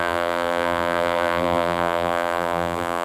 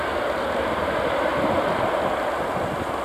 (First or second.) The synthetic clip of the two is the first